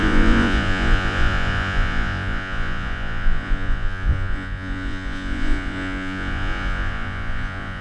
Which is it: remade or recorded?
remade